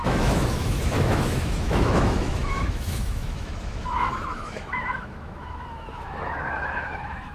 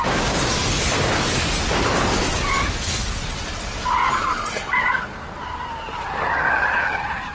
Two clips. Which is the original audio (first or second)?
second